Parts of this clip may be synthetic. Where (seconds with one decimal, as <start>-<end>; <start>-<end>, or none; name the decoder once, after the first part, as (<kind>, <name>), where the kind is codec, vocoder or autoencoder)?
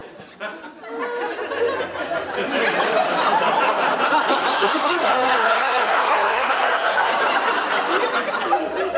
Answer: 4.5-7.1 (codec, SNAC)